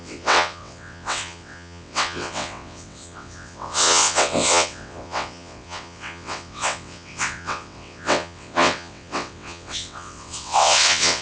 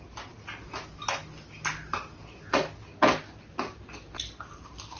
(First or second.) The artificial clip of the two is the first